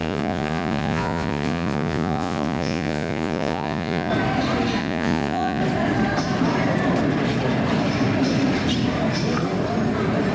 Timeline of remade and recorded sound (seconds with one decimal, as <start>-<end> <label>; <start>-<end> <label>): 0.0-4.1 remade; 4.1-4.8 recorded; 4.8-5.6 remade; 5.6-10.3 recorded